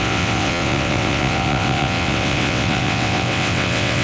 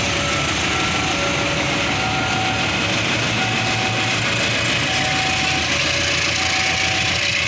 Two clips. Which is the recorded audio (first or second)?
second